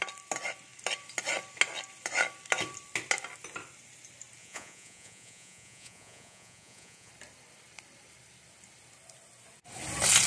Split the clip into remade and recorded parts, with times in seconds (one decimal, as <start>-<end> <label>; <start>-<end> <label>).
0.0-4.4 recorded; 4.4-7.1 remade; 7.1-10.3 recorded